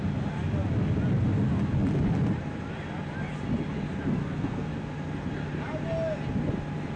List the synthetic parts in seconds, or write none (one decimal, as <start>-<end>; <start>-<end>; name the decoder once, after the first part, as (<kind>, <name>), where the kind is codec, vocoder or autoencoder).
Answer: 4.2-4.7 (codec, SNAC)